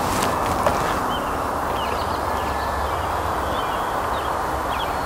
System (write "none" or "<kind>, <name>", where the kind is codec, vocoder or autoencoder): none